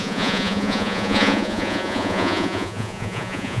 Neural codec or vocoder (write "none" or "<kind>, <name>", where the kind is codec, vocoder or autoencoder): vocoder, Vocos